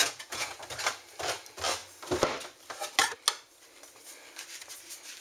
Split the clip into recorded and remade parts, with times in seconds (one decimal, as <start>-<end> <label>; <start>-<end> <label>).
0.0-0.6 remade; 0.6-5.2 recorded